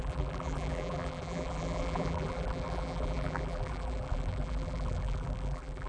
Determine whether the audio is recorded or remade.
remade